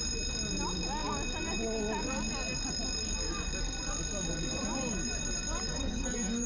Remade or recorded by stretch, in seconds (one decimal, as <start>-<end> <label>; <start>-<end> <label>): 0.0-5.7 recorded; 5.7-6.5 remade